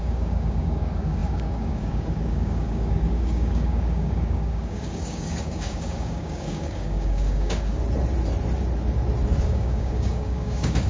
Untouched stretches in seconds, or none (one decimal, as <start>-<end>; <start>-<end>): 7.8-9.4